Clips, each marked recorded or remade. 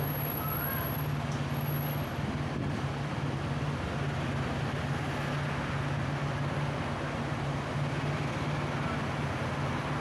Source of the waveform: recorded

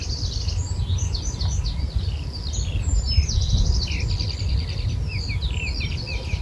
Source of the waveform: recorded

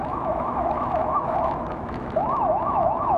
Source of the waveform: remade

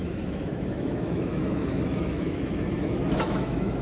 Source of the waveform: remade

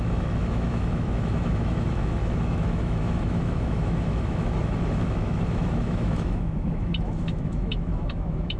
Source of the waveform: remade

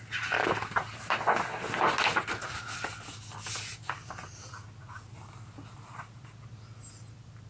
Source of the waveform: recorded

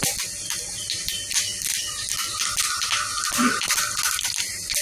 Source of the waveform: recorded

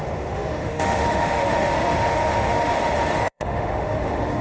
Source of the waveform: remade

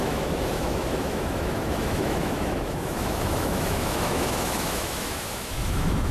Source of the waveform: remade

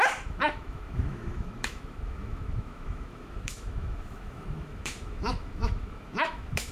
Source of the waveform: remade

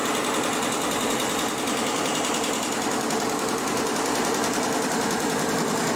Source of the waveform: recorded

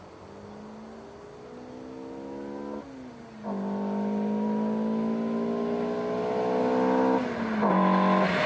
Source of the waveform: recorded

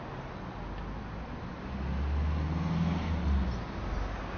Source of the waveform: recorded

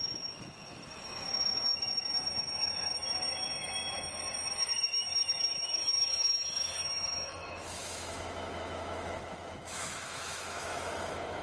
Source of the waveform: remade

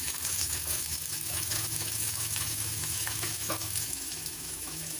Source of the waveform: remade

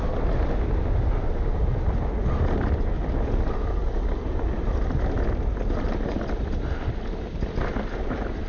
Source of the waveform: recorded